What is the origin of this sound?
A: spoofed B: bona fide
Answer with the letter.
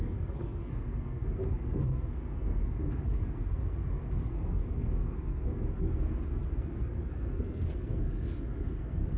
A